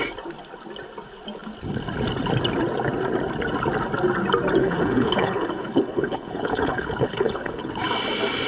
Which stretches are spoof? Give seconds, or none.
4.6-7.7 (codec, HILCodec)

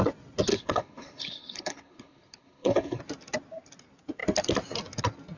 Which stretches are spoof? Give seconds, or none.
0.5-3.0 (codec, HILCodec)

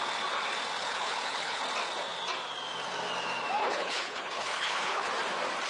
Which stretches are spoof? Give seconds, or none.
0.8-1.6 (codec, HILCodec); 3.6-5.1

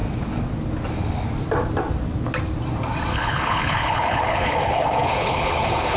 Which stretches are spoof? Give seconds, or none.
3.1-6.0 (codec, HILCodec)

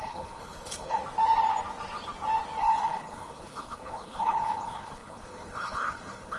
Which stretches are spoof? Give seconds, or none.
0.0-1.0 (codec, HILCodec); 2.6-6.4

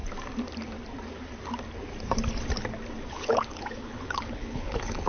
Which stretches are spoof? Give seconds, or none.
3.1-5.1 (codec, HILCodec)